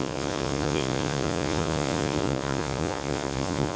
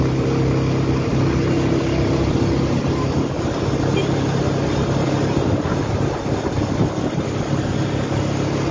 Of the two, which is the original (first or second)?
second